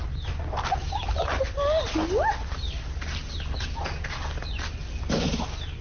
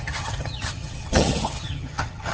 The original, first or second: first